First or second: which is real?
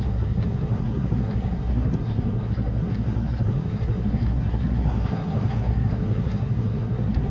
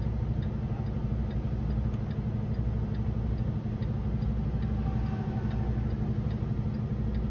second